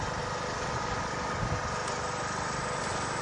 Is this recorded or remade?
recorded